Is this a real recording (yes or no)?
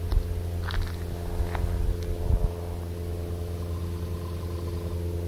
yes